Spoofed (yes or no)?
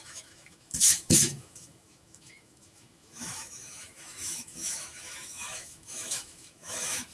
yes